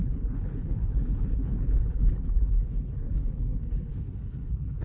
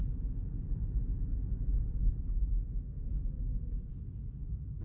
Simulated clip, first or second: first